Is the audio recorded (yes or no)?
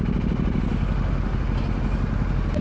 yes